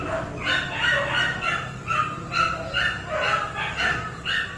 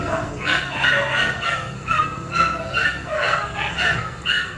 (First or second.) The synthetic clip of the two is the second